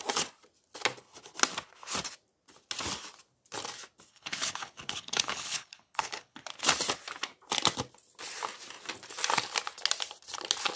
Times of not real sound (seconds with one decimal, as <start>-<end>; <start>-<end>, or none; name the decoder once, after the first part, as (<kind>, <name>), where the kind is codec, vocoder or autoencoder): 4.1-6.5 (codec, HILCodec)